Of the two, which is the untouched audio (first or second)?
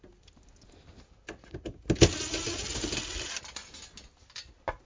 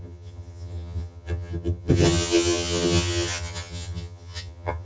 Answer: first